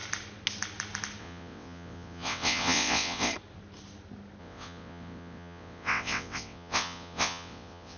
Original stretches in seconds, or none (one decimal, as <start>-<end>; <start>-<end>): 0.0-1.2; 3.3-4.4